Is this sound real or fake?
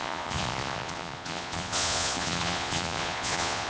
fake